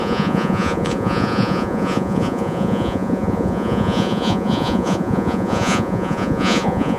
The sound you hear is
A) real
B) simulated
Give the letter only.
B